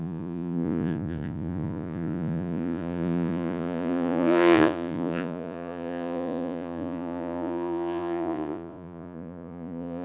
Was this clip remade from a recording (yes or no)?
yes